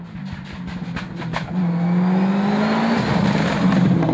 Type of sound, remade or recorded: recorded